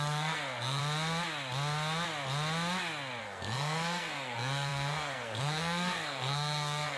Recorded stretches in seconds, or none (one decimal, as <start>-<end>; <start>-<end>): 0.8-3.2